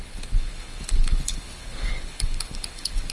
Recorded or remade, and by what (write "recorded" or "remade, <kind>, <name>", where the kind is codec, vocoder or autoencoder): remade, codec, HILCodec